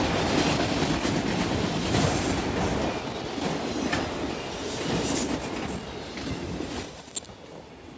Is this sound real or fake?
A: real